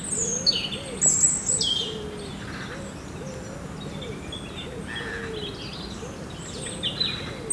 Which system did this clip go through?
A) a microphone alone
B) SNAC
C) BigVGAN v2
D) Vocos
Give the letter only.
A